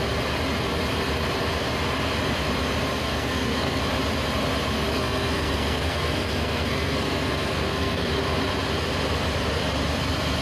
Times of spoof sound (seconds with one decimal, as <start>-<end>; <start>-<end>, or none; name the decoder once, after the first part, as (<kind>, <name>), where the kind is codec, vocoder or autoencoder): 3.0-3.8 (codec, SNAC); 4.9-8.1